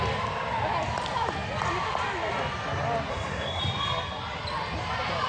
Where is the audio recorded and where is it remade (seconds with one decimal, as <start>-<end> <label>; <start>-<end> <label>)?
0.0-3.1 recorded; 3.1-3.6 remade; 3.6-5.3 recorded